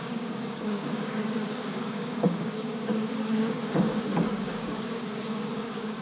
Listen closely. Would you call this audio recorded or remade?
remade